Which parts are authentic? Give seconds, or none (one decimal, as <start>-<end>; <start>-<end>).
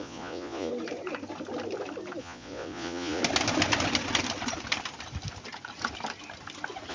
0.7-2.2; 3.2-6.9